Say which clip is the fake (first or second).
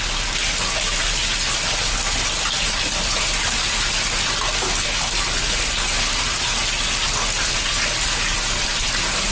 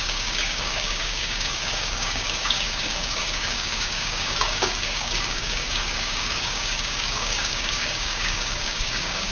second